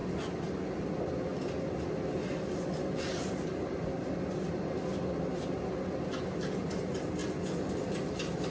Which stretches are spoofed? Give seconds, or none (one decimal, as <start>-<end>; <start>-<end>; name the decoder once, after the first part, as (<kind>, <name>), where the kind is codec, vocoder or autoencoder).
none